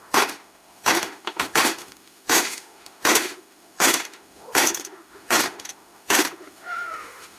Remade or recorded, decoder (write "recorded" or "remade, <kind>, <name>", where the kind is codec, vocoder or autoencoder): remade, autoencoder, DAC-VAE